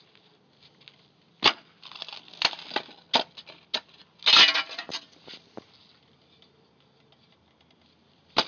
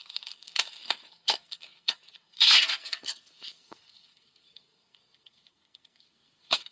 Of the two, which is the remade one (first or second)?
second